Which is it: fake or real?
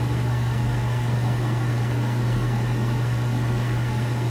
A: fake